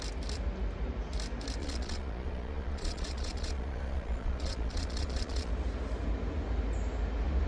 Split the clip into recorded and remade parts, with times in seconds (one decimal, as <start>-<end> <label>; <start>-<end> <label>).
0.0-1.6 recorded; 1.6-5.5 remade; 5.5-7.5 recorded